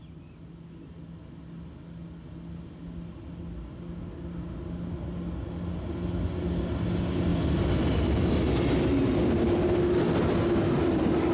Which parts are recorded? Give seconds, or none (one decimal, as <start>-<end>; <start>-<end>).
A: 0.0-11.3